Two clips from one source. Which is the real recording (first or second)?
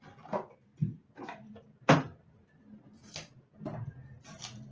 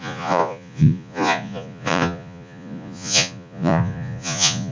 first